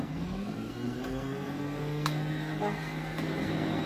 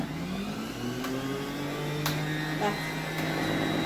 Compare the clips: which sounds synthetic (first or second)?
first